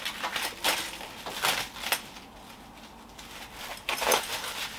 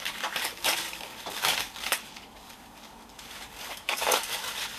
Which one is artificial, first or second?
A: second